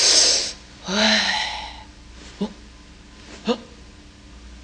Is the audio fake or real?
real